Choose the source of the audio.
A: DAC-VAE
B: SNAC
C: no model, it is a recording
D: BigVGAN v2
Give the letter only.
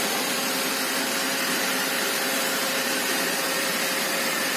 D